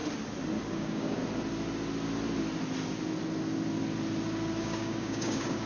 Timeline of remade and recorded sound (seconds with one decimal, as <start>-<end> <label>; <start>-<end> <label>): 0.0-0.7 recorded; 0.7-1.2 remade; 1.2-4.6 recorded; 4.6-5.7 remade